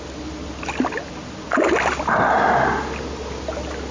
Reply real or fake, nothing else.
real